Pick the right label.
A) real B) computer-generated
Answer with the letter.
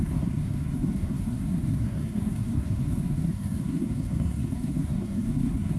B